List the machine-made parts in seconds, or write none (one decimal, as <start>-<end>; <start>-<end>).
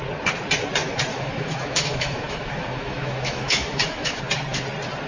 1.1-4.2